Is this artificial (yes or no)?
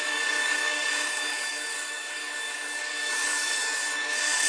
yes